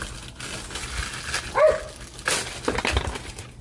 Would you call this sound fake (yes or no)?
no